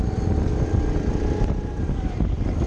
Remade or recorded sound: recorded